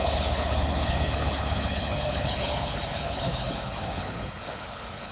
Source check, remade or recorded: remade